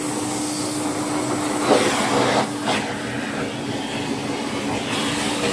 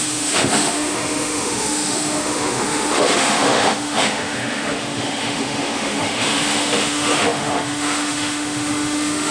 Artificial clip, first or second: second